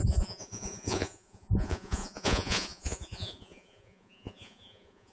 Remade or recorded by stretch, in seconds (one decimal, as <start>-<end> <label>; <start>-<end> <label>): 0.0-5.1 remade